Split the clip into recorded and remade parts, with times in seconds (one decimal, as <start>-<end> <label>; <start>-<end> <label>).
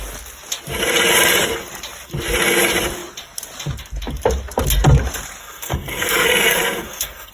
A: 0.0-5.4 recorded; 5.4-7.3 remade